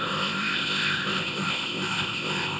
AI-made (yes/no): yes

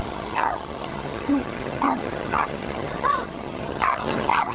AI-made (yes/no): yes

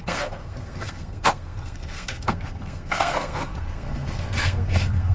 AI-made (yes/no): yes